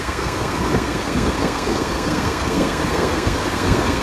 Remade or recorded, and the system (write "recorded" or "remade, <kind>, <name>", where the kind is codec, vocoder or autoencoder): remade, codec, SNAC